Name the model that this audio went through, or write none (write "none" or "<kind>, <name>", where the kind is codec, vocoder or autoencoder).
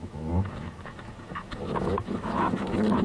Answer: autoencoder, DAC-VAE